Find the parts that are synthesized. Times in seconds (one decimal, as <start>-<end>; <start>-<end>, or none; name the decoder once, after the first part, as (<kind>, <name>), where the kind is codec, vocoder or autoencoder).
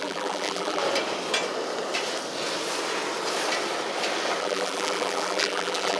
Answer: 0.0-0.8 (vocoder, BigVGAN v2); 4.4-6.0